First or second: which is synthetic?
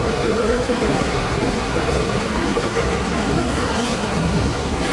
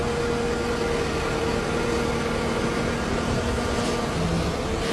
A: first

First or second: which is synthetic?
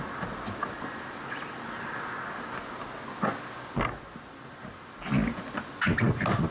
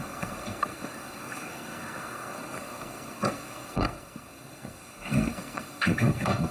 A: second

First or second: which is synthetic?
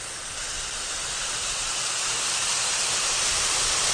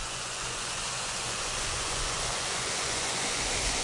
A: second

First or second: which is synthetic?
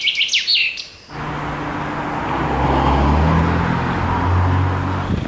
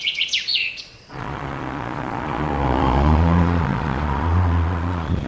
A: second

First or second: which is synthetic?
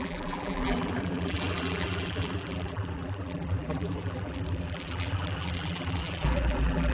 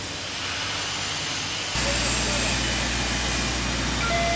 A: first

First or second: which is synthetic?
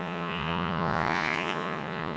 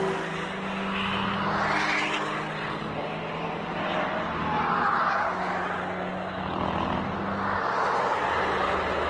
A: first